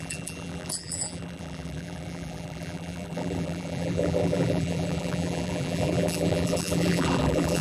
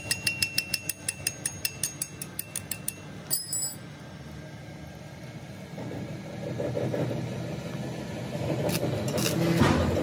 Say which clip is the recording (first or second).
second